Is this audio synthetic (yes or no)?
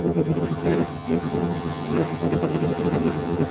yes